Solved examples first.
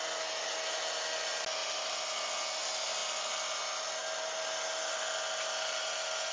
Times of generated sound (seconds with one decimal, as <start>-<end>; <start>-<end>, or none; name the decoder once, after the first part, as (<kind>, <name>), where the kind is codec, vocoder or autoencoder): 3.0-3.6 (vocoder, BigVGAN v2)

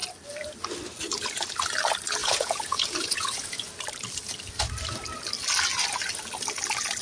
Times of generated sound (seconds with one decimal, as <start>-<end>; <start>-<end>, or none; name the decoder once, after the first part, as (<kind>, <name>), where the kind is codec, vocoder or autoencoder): 2.2-3.7 (vocoder, Vocos)

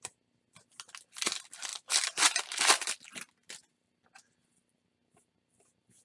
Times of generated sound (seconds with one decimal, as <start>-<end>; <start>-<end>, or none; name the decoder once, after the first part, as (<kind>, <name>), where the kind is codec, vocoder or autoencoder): none

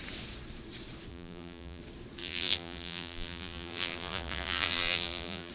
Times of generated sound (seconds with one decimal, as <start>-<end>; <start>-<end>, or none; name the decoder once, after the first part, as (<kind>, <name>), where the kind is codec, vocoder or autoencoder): 1.1-1.8 (vocoder, BigVGAN v2); 2.2-5.5